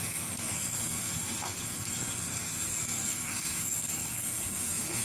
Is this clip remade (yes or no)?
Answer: yes